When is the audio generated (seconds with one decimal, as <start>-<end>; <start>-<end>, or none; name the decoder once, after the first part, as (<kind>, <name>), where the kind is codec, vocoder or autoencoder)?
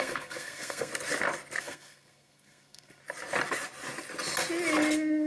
0.0-0.9 (codec, SNAC); 1.6-3.0